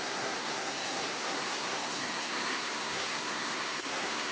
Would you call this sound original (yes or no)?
no